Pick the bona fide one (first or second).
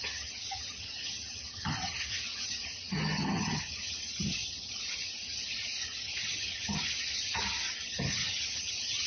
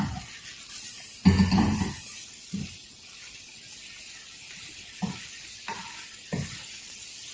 second